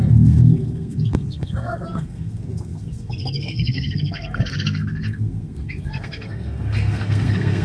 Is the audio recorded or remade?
remade